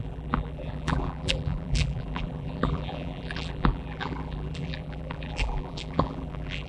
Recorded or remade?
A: remade